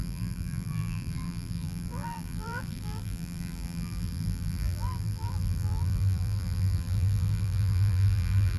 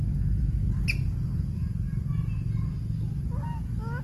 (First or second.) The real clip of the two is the second